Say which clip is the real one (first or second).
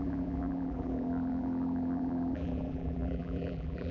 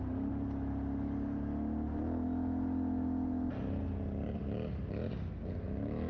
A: second